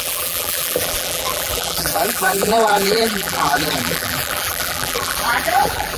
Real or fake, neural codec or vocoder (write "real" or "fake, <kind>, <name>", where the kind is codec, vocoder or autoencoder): fake, vocoder, BigVGAN v2